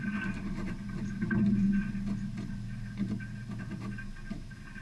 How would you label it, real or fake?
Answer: real